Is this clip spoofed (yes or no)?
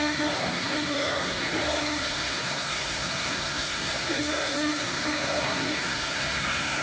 yes